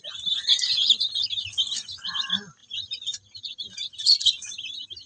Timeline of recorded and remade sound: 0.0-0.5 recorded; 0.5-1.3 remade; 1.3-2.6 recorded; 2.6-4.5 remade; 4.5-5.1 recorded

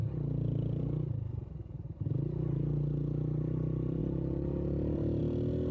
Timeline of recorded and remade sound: 0.0-5.7 recorded

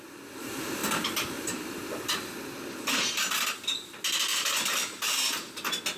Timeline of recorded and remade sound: 0.0-4.3 recorded; 4.3-5.5 remade; 5.5-6.0 recorded

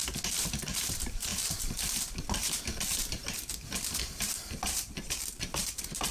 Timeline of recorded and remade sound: 0.0-0.6 recorded; 0.6-3.2 remade; 3.2-4.0 recorded; 4.0-6.1 remade

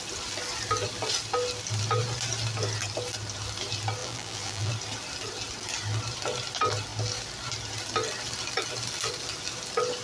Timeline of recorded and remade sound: 0.0-4.0 recorded; 4.0-4.7 remade; 4.7-10.0 recorded

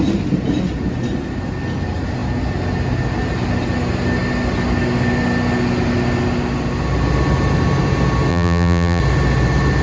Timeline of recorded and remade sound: 0.0-8.3 recorded; 8.3-9.0 remade; 9.0-9.8 recorded